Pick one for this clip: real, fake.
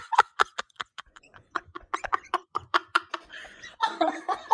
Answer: fake